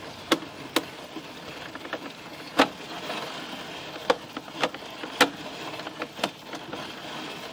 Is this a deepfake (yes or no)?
no